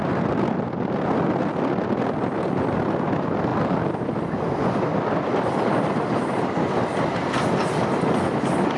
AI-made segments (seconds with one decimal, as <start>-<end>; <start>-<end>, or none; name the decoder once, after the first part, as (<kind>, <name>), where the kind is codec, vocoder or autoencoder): none